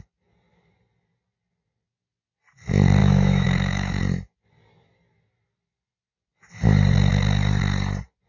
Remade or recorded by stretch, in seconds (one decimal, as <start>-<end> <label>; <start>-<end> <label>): 0.0-3.0 recorded; 3.0-4.0 remade; 4.0-8.3 recorded